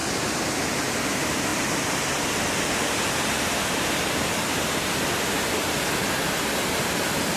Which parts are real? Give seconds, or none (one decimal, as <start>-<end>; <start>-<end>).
0.0-7.4